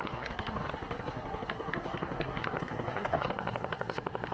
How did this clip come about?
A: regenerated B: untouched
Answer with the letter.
A